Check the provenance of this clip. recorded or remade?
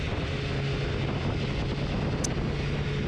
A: recorded